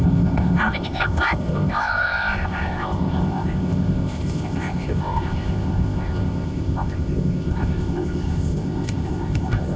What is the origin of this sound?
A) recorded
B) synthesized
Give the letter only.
B